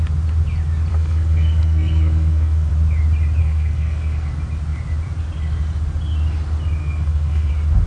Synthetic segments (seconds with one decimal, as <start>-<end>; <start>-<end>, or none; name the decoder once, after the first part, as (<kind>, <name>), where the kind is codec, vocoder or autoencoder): 0.9-2.7 (codec, SNAC); 3.4-4.3; 6.8-7.5